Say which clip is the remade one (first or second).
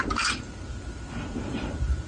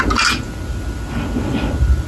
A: first